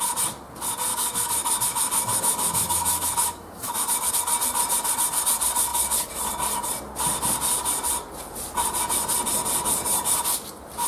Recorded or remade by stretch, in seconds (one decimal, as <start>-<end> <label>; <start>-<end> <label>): 0.0-0.9 recorded; 0.9-4.1 remade; 4.1-10.9 recorded